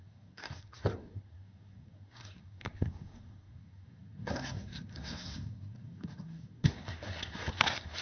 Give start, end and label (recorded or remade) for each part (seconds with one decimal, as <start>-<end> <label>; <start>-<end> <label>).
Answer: 0.0-8.0 remade